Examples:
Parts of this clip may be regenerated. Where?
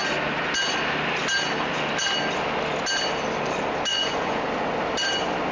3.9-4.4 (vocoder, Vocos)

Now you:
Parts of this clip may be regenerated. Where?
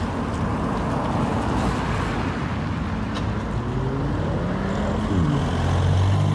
none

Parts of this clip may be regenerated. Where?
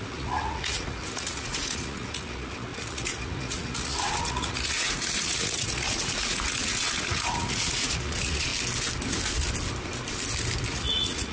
0.0-8.5 (vocoder, Vocos); 10.7-11.3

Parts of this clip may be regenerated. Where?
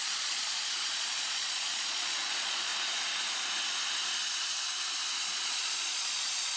0.0-2.7 (vocoder, Vocos); 5.2-6.6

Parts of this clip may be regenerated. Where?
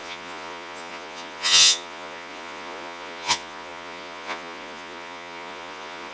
0.0-6.1 (vocoder, Vocos)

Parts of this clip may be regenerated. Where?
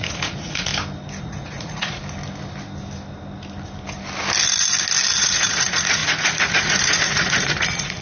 0.0-0.7 (vocoder, Vocos); 1.2-2.0; 5.2-8.0